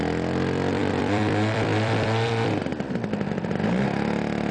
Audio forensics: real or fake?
fake